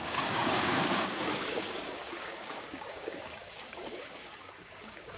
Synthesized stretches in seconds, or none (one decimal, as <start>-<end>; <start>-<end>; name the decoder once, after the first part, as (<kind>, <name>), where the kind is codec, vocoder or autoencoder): 0.0-5.2 (codec, DAC)